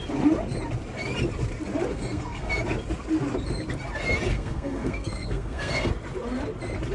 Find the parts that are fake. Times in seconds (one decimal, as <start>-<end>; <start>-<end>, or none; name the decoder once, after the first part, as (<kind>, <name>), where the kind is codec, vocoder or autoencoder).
1.9-2.5 (codec, SNAC); 4.3-5.9